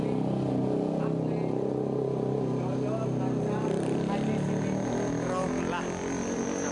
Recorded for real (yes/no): yes